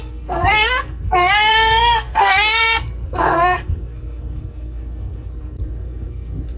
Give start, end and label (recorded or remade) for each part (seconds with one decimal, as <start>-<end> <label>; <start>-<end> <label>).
0.0-6.6 remade